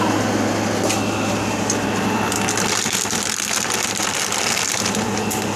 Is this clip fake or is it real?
real